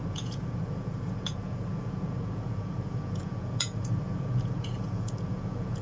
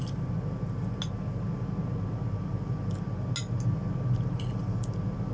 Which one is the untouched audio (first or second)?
second